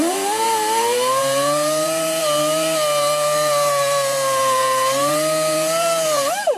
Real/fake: fake